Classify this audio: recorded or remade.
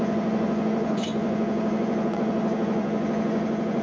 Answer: remade